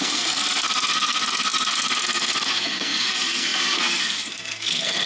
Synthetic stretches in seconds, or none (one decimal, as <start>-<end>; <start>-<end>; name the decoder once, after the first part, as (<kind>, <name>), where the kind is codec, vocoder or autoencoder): 0.0-5.1 (codec, SNAC)